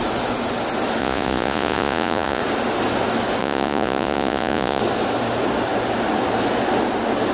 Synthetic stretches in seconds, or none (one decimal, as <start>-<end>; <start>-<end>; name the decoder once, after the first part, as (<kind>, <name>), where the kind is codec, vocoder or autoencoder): 1.0-2.4 (vocoder, Vocos); 3.4-4.8